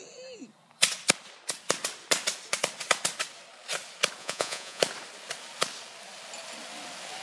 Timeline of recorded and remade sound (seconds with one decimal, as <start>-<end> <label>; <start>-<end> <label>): 0.0-4.2 recorded; 4.2-4.8 remade; 4.8-7.2 recorded